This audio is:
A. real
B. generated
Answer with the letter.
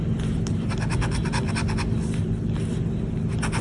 A